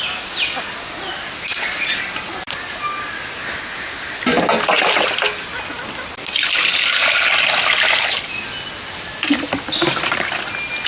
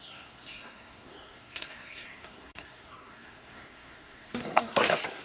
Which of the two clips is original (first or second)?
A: first